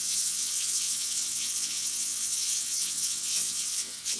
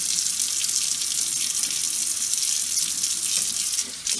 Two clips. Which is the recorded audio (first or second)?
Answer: second